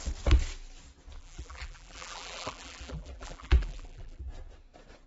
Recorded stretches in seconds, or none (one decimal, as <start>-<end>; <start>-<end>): 0.0-1.2; 4.3-5.1